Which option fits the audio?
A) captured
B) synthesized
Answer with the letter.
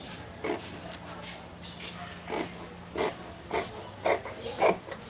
A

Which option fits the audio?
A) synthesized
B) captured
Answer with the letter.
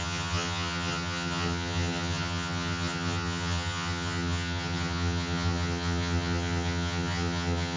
A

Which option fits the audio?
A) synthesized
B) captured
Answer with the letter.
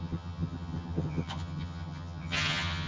A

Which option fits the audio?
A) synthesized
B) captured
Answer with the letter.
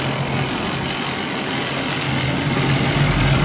B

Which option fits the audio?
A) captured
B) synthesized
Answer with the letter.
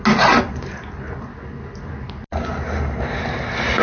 A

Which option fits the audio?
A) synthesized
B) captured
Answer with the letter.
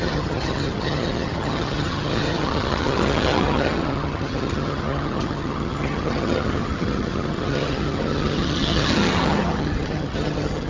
A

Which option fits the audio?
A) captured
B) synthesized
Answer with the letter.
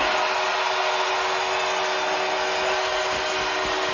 A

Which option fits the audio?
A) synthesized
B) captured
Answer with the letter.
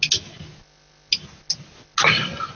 B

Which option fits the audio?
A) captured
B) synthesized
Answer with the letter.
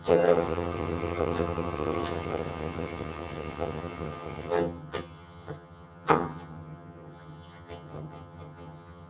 B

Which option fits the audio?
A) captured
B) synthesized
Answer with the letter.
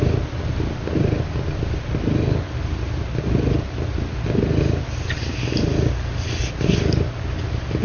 A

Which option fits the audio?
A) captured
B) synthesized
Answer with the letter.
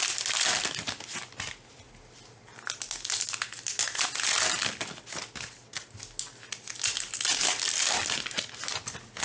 A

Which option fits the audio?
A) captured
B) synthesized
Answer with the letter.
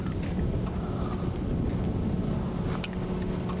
A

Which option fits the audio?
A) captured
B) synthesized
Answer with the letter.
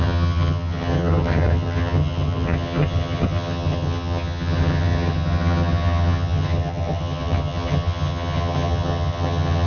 B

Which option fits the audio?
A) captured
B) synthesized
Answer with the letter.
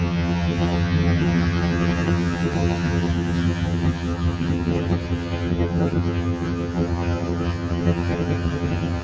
B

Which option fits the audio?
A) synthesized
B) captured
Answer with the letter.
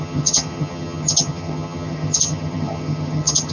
A